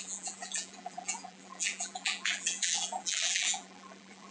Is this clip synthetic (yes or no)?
yes